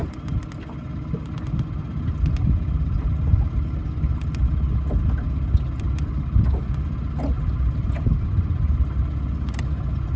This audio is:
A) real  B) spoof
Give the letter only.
A